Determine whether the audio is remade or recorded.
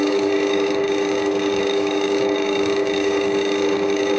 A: remade